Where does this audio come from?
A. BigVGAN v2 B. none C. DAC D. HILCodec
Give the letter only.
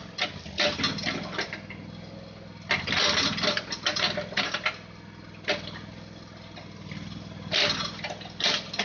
B